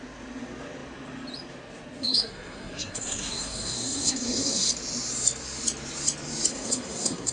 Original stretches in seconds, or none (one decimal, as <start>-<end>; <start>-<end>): 0.0-2.0; 4.7-6.5